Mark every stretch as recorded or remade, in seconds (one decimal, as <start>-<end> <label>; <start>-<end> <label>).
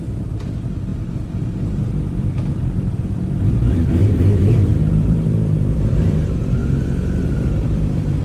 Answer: 0.0-4.0 remade; 4.0-4.9 recorded; 4.9-6.6 remade; 6.6-7.2 recorded; 7.2-8.2 remade